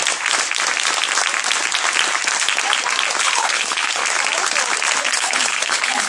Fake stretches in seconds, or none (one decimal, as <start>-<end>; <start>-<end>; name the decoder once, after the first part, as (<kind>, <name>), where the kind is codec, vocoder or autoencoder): 3.2-4.0 (codec, HILCodec); 5.0-6.1

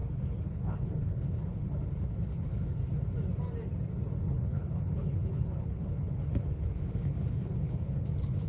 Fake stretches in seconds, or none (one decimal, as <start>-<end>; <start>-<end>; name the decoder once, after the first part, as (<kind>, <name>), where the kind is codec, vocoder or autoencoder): 0.0-2.8 (codec, HILCodec); 4.3-8.5

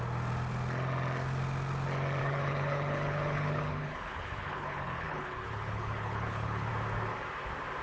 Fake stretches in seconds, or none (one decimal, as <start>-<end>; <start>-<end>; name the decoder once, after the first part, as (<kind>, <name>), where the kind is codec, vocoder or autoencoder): 2.2-6.7 (codec, HILCodec)

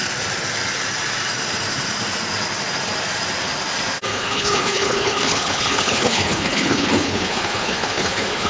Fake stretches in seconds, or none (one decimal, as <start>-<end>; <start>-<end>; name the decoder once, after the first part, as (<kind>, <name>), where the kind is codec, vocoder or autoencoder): 4.1-8.5 (codec, HILCodec)

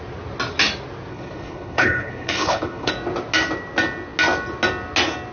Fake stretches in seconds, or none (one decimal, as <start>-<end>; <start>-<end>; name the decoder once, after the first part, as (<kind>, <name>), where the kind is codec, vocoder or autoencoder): 1.1-2.9 (codec, HILCodec)